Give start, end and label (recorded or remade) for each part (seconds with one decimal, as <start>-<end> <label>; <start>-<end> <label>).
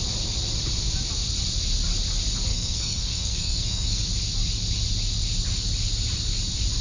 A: 0.0-2.5 recorded; 2.5-4.0 remade; 4.0-6.8 recorded